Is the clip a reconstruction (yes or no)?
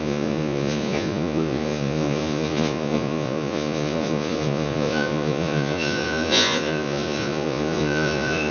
yes